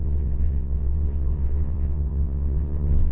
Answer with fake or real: fake